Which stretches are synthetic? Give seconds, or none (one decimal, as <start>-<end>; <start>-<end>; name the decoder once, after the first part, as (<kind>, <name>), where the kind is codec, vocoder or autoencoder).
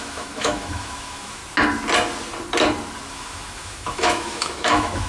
0.0-1.4 (autoencoder, DAC-VAE); 3.1-5.1